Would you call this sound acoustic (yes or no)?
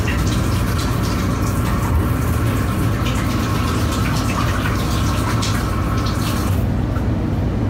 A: yes